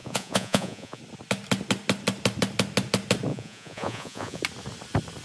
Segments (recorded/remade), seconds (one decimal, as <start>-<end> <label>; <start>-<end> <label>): 0.0-1.0 remade; 1.0-3.3 recorded; 3.3-4.4 remade; 4.4-5.2 recorded

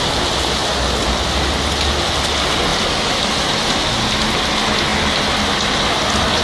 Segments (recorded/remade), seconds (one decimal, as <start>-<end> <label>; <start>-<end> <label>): 0.0-6.4 recorded

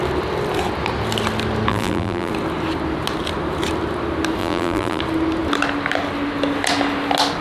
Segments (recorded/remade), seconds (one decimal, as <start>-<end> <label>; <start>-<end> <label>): 0.0-1.7 recorded; 1.7-2.3 remade; 2.3-4.4 recorded; 4.4-5.0 remade; 5.0-7.4 recorded

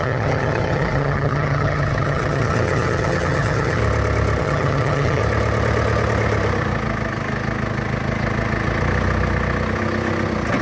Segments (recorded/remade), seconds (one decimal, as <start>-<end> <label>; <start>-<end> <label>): 0.0-3.8 remade; 3.8-4.4 recorded; 4.4-5.2 remade; 5.2-10.6 recorded

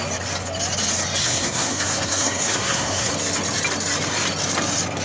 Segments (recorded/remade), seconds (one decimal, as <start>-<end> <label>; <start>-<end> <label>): 0.0-1.2 recorded; 1.2-3.1 remade; 3.1-5.0 recorded

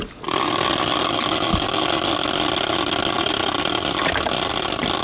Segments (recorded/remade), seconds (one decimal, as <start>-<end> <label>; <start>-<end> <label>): 0.0-5.0 recorded

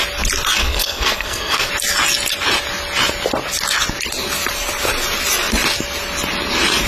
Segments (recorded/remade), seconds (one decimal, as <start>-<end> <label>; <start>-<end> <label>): 0.0-0.6 recorded; 0.6-1.7 remade; 1.7-6.9 recorded